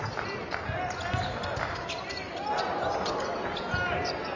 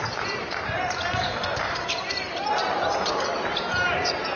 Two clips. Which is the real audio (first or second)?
first